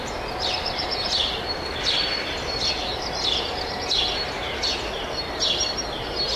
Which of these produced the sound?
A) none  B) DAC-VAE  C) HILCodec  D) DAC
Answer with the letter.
A